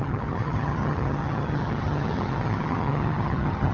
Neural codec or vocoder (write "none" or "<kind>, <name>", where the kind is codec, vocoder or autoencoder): vocoder, HiFi-GAN